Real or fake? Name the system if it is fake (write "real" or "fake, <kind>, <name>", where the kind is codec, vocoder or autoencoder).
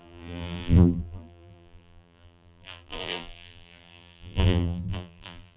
fake, vocoder, BigVGAN v2